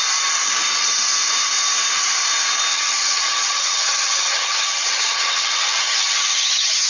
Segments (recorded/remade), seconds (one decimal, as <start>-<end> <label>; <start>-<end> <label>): 0.0-2.7 recorded; 2.7-6.9 remade